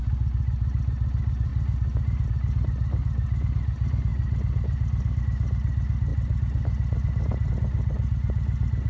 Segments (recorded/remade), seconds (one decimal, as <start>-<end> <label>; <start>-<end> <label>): 0.0-8.9 recorded